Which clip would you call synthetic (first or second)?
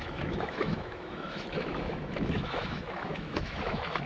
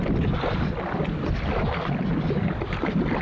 first